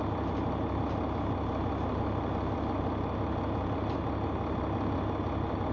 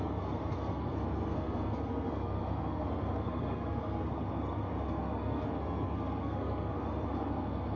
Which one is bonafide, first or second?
first